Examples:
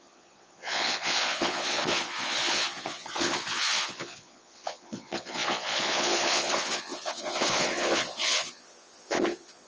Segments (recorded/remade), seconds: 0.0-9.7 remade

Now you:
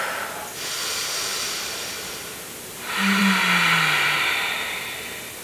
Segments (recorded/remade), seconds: 0.0-1.3 recorded; 1.3-3.2 remade; 3.2-5.4 recorded